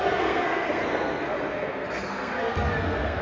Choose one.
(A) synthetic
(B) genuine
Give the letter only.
A